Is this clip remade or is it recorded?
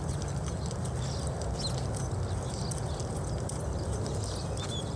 recorded